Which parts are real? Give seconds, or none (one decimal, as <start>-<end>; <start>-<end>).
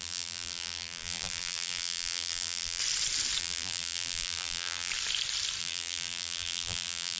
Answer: 2.8-3.4; 4.9-5.6